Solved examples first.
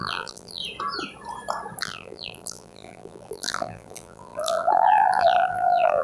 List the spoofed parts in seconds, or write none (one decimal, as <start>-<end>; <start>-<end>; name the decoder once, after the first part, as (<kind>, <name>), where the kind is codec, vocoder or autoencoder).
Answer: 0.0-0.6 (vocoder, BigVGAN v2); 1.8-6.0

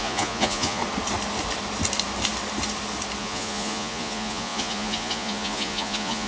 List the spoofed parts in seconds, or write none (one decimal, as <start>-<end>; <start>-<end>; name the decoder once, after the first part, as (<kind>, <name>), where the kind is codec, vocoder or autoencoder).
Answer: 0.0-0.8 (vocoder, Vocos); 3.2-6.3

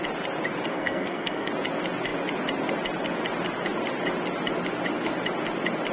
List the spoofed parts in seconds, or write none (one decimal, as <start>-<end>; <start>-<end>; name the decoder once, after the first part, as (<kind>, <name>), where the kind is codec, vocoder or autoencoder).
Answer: 0.7-1.5 (codec, SNAC)

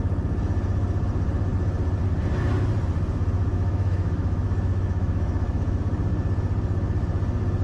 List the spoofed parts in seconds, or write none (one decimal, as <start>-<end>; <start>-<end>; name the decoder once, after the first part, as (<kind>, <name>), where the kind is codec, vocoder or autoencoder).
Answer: 3.5-5.8 (autoencoder, DAC-VAE)

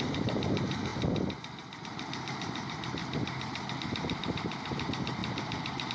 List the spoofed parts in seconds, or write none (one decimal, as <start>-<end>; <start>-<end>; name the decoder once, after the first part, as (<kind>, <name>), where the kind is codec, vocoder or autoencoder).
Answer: 0.0-0.9 (vocoder, BigVGAN v2); 1.8-3.0; 3.8-5.9